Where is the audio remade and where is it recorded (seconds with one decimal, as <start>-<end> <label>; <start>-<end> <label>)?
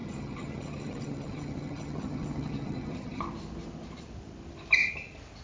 0.0-3.2 remade; 3.2-5.4 recorded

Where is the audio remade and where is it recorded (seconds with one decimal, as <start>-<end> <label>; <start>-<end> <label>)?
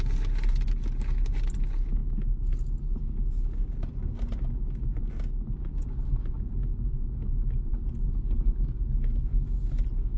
0.0-10.2 recorded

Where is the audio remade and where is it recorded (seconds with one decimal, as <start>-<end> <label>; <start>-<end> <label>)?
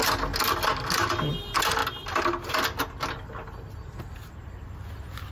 0.0-5.3 recorded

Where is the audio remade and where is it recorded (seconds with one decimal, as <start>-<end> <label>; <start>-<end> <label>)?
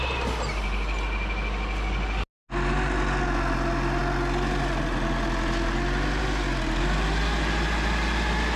0.0-8.6 recorded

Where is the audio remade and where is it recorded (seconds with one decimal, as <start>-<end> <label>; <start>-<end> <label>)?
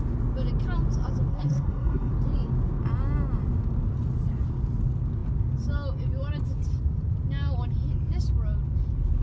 0.0-1.3 recorded; 1.3-2.1 remade; 2.1-9.2 recorded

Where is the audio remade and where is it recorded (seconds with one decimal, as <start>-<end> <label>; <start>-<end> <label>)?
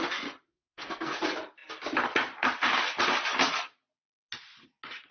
0.0-0.5 recorded; 0.5-1.2 remade; 1.2-5.1 recorded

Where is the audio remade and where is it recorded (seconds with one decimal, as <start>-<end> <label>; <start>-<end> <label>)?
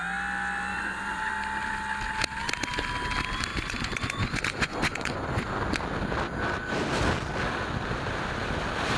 0.0-0.7 recorded; 0.7-1.3 remade; 1.3-3.5 recorded; 3.5-5.6 remade; 5.6-9.0 recorded